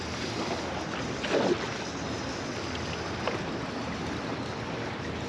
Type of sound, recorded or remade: recorded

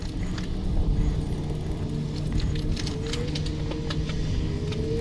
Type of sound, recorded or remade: recorded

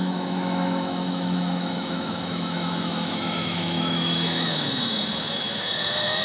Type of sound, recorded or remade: remade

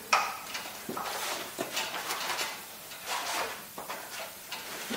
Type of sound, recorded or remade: remade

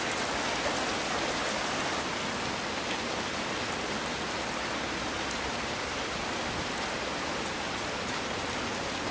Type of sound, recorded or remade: recorded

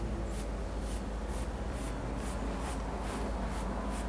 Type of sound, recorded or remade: recorded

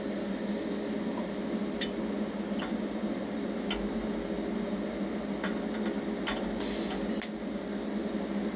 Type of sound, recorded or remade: recorded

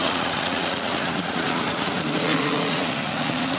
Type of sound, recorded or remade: remade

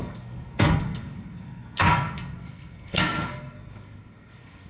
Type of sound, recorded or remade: remade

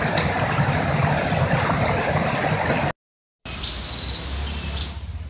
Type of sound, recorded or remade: recorded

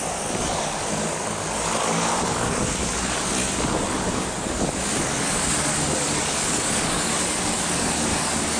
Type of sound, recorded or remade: remade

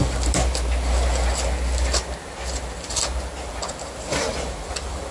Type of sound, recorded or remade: recorded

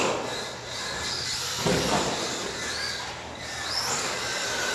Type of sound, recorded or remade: recorded